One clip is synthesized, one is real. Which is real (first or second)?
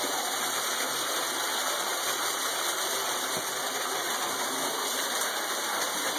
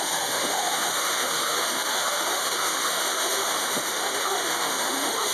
first